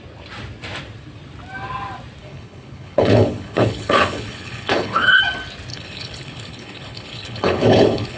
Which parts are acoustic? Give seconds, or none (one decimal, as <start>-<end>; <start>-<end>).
0.0-2.2; 5.2-5.7

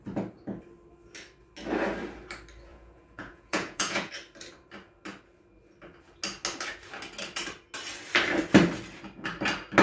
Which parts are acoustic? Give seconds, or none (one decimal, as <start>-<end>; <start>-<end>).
0.0-2.7; 4.1-9.8

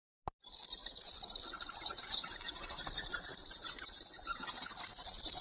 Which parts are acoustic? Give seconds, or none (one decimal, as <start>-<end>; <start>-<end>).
0.0-0.8; 4.0-5.4

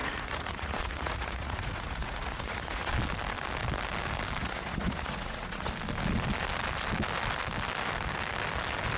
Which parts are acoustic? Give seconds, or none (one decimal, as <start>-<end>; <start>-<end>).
2.9-4.4; 5.7-9.0